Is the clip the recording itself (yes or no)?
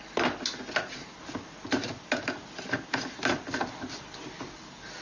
yes